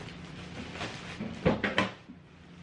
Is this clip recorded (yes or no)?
yes